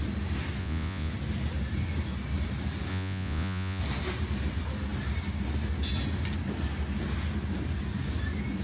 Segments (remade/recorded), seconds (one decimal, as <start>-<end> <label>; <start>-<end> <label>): 0.0-0.6 recorded; 0.6-1.1 remade; 1.1-2.9 recorded; 2.9-3.8 remade; 3.8-8.6 recorded